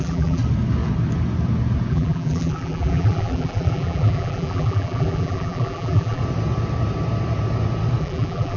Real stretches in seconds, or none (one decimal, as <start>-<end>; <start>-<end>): 0.4-1.9; 6.2-8.0